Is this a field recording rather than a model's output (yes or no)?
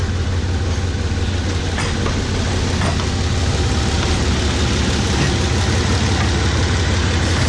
yes